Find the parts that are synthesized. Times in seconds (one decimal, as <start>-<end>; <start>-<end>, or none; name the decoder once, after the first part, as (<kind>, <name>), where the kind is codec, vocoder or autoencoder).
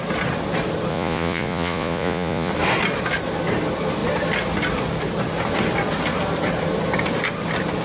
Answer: 0.9-2.5 (vocoder, Vocos)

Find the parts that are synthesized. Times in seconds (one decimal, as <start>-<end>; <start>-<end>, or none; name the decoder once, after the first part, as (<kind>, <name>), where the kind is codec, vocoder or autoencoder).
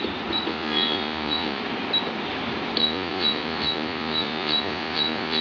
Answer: 0.5-1.6 (vocoder, Vocos); 2.8-5.4